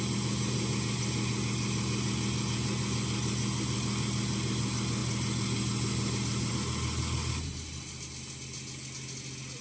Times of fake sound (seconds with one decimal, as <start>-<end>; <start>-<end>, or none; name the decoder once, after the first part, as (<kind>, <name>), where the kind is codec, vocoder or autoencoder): none